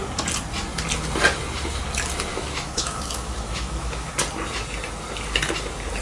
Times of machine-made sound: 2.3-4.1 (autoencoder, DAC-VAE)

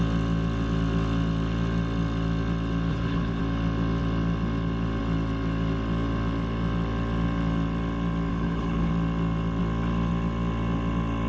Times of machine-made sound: 2.9-3.4 (codec, HILCodec); 8.3-8.9

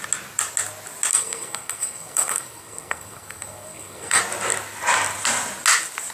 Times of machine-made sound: 1.1-4.2 (codec, SNAC)